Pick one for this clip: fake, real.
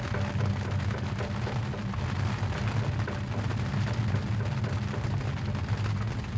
real